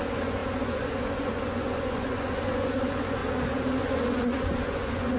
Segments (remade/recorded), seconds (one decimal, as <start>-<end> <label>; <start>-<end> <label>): 0.0-3.2 remade; 3.2-3.8 recorded; 3.8-5.2 remade